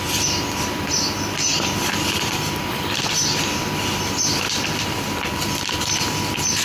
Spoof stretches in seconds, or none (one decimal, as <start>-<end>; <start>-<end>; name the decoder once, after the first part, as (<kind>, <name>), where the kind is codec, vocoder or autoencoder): 1.5-5.4 (vocoder, BigVGAN v2)